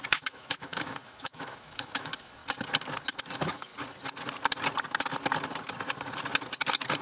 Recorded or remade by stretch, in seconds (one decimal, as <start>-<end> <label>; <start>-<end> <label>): 0.0-2.4 remade; 2.4-3.2 recorded; 3.2-3.7 remade; 3.7-7.0 recorded